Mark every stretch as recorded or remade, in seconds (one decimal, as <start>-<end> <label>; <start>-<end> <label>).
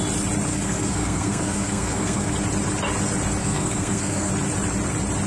0.0-0.5 recorded; 0.5-2.3 remade; 2.3-3.4 recorded; 3.4-4.3 remade; 4.3-5.3 recorded